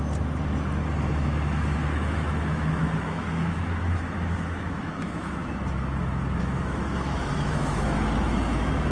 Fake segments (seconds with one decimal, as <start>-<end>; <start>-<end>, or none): 1.1-8.9